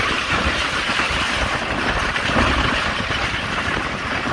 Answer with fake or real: fake